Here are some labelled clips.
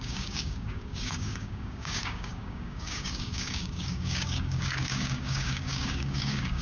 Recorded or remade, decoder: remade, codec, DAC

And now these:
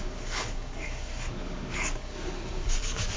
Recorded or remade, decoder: remade, codec, DAC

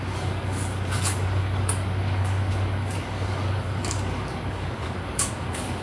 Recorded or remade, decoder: remade, codec, DAC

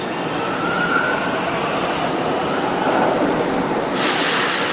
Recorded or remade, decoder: recorded